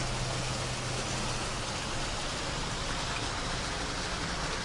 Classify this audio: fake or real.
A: real